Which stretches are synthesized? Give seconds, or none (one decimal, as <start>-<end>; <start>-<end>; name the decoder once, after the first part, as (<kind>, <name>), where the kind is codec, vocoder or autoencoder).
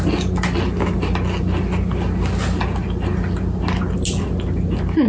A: none